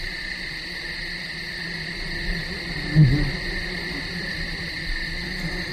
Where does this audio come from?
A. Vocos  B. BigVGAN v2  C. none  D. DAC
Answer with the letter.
C